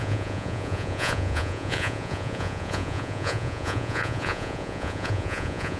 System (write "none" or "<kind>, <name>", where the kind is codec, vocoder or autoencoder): vocoder, Vocos